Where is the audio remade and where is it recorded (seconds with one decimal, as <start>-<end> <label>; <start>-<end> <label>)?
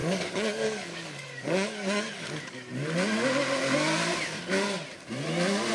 0.0-2.7 remade; 2.7-5.7 recorded